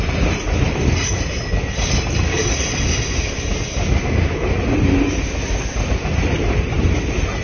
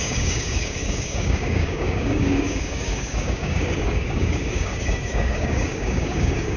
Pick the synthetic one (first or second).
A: second